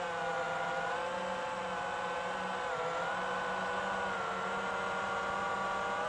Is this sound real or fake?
real